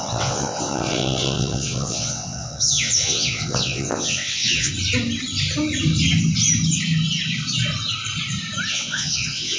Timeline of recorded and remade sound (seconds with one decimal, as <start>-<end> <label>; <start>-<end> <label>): 0.0-4.7 remade; 4.7-8.7 recorded; 8.7-9.6 remade